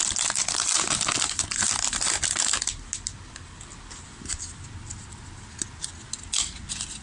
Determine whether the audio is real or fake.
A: real